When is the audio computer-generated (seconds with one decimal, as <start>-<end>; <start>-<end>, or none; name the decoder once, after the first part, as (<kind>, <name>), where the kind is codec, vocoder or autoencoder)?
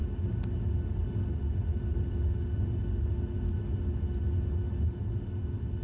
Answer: none